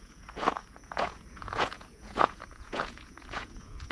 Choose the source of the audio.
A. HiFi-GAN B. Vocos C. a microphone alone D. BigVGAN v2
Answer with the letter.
B